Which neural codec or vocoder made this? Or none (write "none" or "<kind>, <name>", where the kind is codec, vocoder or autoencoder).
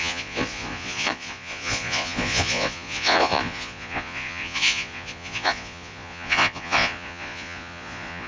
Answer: vocoder, Vocos